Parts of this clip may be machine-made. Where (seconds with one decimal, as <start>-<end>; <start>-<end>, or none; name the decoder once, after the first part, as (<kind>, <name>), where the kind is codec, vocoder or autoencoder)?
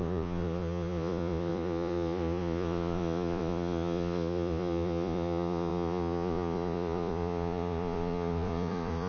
0.0-9.1 (vocoder, Vocos)